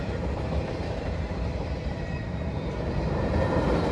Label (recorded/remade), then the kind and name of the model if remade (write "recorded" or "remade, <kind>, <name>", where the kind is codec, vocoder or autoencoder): remade, vocoder, BigVGAN v2